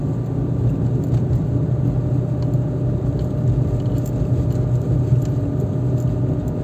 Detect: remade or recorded recorded